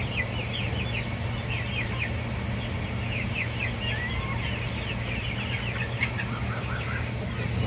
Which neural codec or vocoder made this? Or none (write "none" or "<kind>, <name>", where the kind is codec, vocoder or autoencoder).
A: none